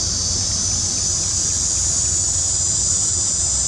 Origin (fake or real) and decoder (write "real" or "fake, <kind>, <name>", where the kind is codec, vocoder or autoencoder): real